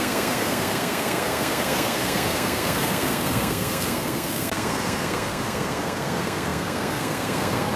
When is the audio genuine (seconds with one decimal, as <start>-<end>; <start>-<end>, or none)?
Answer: none